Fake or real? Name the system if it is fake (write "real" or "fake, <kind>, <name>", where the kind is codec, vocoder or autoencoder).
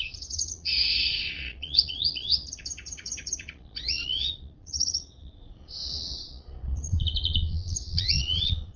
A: fake, vocoder, Vocos